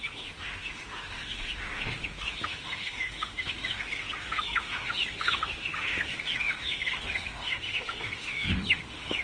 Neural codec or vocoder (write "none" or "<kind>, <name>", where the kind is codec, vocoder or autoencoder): autoencoder, DAC-VAE